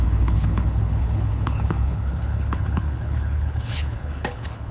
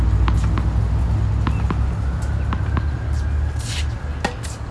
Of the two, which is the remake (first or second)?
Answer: first